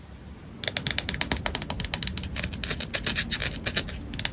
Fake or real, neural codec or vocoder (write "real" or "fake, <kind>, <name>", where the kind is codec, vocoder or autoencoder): real